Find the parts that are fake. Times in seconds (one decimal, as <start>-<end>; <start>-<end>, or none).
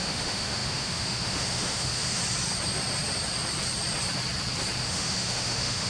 0.0-2.2; 4.8-5.9